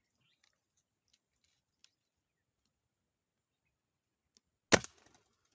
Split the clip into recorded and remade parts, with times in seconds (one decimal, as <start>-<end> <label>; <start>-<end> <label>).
0.0-5.5 recorded